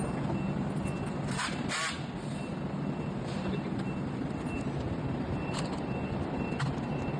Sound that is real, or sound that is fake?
real